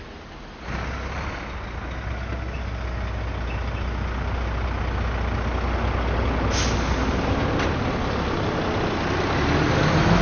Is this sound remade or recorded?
recorded